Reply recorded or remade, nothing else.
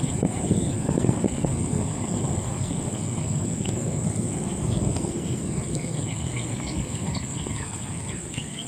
remade